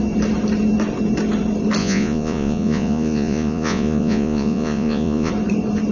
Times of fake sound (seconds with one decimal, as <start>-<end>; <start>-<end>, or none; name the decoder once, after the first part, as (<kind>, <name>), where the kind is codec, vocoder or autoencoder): 1.8-5.3 (vocoder, Vocos)